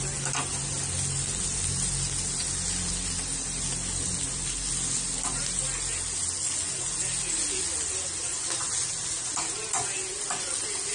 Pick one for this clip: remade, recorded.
recorded